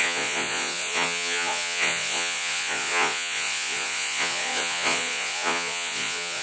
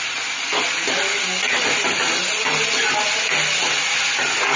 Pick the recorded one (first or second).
second